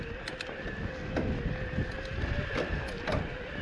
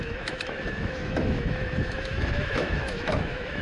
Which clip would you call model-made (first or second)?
second